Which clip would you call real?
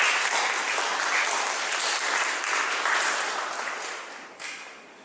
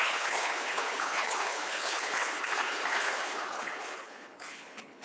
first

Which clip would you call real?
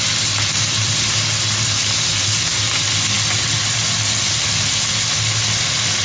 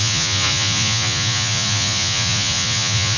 first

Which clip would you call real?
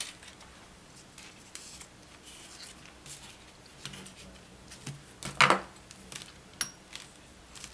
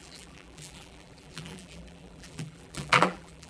first